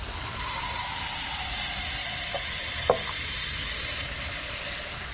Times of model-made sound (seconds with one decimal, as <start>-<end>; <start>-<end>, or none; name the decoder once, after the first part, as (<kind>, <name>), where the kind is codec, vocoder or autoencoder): 0.0-0.7 (vocoder, BigVGAN v2); 2.0-5.1